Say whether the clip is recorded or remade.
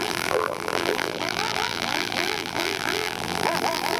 remade